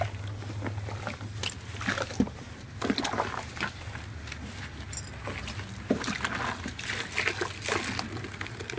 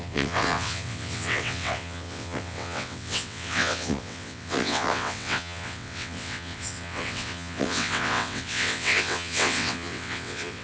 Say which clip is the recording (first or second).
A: first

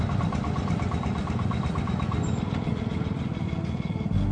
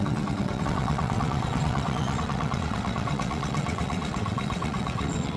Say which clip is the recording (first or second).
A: first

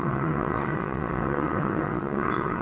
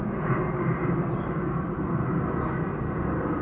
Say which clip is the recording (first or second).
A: second